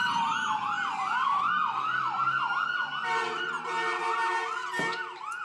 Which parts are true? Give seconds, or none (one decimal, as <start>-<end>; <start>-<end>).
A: 0.0-5.4